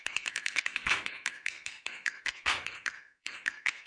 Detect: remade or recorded remade